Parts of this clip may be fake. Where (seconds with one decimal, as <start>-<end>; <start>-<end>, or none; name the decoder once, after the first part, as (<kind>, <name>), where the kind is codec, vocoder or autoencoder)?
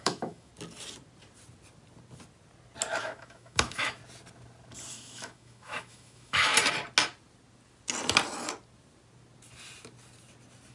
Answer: 0.0-0.5 (autoencoder, DAC-VAE); 3.0-4.0; 4.9-6.5